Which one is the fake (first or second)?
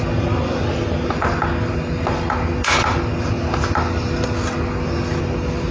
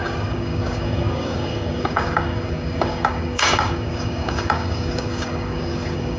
second